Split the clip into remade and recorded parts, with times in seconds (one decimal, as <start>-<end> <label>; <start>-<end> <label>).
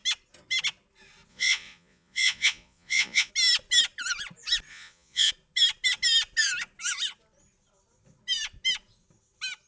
0.0-1.3 recorded; 1.3-3.3 remade; 3.3-4.7 recorded; 4.7-5.3 remade; 5.3-9.7 recorded